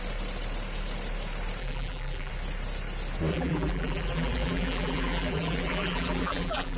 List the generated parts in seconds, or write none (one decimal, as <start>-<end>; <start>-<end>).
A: 1.6-2.3; 3.3-6.8